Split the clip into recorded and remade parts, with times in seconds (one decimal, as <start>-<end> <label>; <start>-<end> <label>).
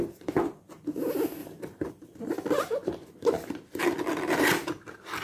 0.0-1.4 recorded; 1.4-2.3 remade; 2.3-2.8 recorded; 2.8-3.9 remade; 3.9-5.2 recorded